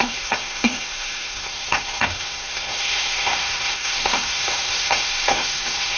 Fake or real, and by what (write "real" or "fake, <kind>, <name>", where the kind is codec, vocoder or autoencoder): fake, codec, SNAC